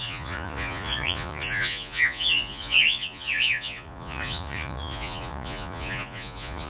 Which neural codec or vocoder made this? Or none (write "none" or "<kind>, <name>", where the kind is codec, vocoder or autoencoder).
vocoder, Vocos